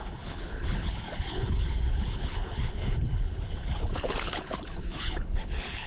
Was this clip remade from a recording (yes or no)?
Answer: yes